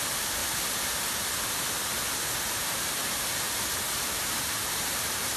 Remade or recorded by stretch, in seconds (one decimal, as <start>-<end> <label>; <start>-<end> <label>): 0.0-0.4 remade; 0.4-2.4 recorded; 2.4-5.4 remade